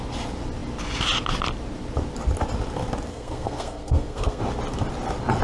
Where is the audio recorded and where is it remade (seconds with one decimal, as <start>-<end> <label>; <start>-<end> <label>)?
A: 0.0-3.1 recorded; 3.1-4.4 remade; 4.4-5.4 recorded